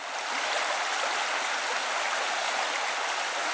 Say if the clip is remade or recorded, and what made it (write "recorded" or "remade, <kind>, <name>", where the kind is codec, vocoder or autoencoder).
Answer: recorded